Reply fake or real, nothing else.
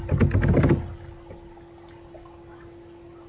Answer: real